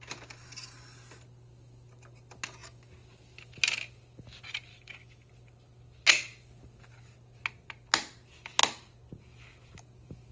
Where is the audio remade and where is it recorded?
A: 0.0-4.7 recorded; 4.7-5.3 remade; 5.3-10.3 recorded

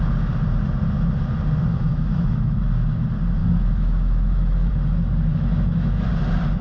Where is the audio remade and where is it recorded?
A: 0.0-1.7 recorded; 1.7-2.7 remade; 2.7-3.4 recorded; 3.4-4.7 remade; 4.7-5.3 recorded; 5.3-6.1 remade; 6.1-6.6 recorded